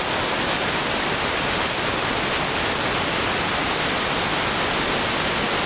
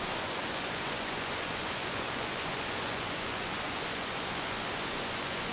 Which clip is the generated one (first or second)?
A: second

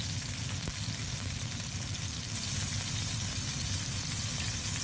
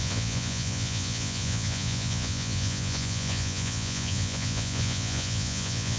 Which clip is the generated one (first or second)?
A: second